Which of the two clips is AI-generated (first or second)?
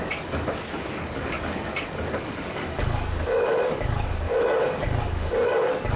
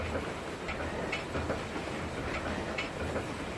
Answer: first